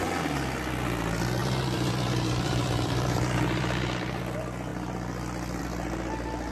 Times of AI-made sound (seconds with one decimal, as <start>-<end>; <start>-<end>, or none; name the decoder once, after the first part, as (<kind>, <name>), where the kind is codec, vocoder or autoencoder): 1.4-4.2 (vocoder, BigVGAN v2)